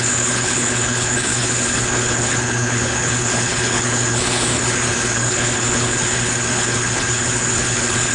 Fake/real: fake